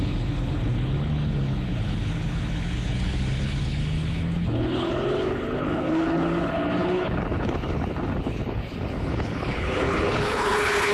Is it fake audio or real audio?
fake